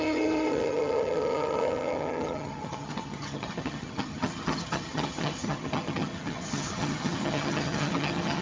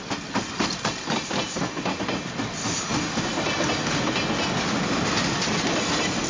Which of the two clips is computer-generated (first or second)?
first